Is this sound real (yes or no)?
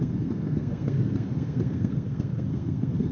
no